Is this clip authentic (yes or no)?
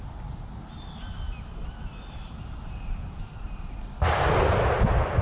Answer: yes